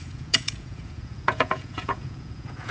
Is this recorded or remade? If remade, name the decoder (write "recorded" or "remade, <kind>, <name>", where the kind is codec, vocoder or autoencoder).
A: remade, vocoder, Vocos